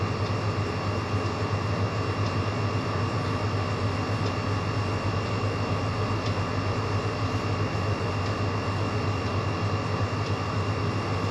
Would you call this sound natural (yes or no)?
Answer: yes